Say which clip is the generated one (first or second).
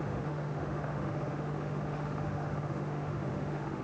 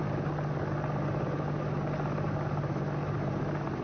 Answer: first